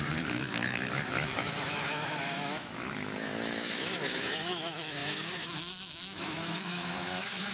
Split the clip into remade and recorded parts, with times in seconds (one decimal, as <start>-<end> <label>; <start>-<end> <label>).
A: 0.0-7.5 remade